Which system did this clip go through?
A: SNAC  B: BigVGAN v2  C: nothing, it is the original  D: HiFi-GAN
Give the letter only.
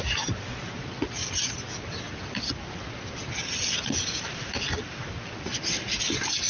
C